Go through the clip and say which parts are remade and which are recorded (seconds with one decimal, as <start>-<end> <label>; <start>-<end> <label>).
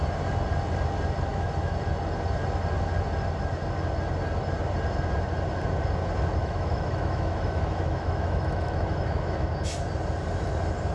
0.0-1.3 recorded; 1.3-1.8 remade; 1.8-6.4 recorded; 6.4-9.5 remade; 9.5-10.9 recorded